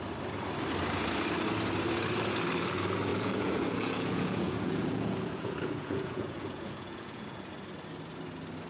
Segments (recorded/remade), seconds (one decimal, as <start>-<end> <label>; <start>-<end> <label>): 0.0-3.1 recorded; 3.1-7.5 remade; 7.5-8.7 recorded

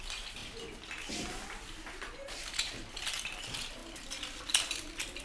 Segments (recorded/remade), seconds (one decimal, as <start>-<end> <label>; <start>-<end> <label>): 0.0-5.2 recorded

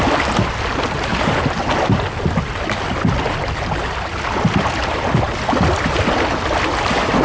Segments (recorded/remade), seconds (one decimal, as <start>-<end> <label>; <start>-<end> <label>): 0.0-7.2 recorded

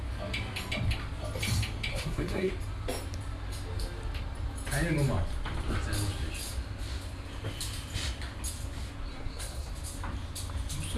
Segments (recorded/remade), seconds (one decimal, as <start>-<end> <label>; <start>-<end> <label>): 0.0-1.9 recorded; 1.9-2.5 remade; 2.5-9.1 recorded; 9.1-9.7 remade; 9.7-11.0 recorded

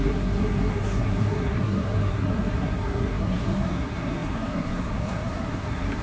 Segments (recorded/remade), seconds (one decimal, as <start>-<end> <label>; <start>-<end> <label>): 0.0-6.0 remade

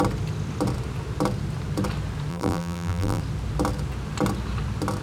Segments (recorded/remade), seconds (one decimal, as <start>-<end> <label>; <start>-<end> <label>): 0.0-2.3 recorded; 2.3-3.2 remade; 3.2-5.0 recorded